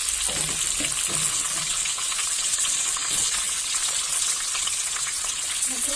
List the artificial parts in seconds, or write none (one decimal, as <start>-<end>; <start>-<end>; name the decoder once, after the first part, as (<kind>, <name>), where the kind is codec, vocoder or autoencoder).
1.3-6.0 (vocoder, WaveNeXt)